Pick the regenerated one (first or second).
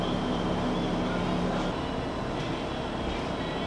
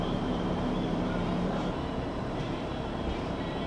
second